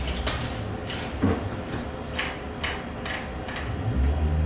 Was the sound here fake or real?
real